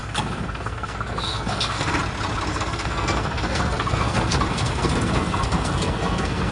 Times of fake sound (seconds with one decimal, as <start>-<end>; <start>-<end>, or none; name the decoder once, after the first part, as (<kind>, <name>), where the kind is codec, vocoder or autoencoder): 0.0-2.0 (codec, SNAC); 2.5-6.5